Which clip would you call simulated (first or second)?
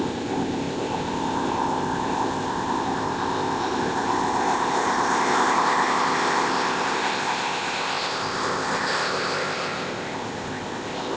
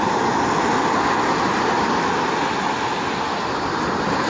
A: first